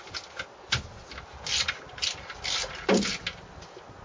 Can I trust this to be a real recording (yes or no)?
yes